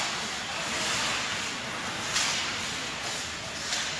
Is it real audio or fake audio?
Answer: real